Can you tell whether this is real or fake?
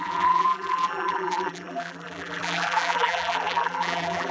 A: fake